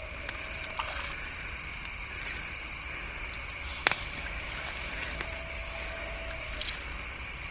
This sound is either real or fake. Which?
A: real